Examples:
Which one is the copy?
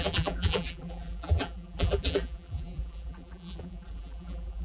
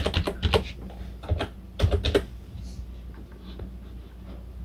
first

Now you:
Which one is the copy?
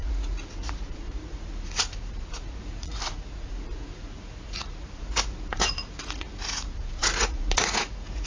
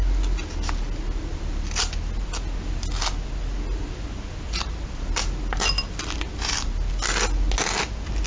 first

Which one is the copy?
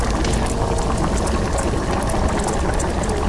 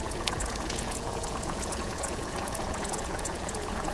second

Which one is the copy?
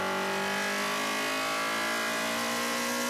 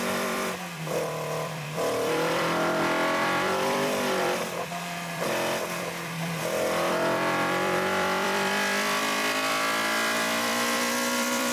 second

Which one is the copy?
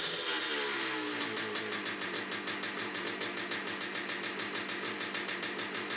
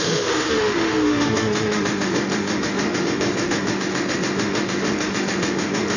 second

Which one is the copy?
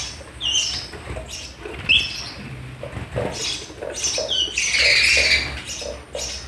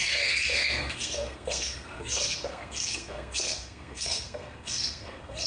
second